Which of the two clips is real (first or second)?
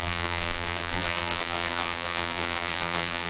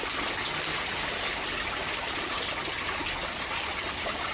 second